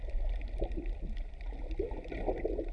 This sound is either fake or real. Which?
real